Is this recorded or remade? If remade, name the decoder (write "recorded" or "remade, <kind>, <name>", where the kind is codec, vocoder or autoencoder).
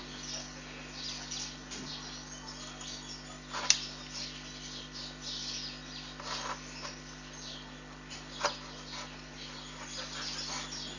recorded